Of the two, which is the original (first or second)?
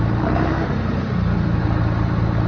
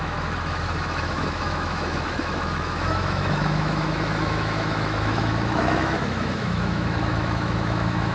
first